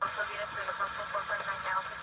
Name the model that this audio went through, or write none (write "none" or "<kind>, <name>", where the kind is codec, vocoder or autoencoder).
vocoder, Vocos